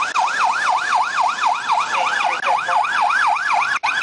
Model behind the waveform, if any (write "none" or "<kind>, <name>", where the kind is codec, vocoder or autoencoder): none